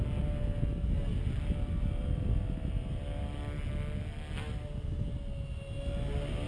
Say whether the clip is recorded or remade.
recorded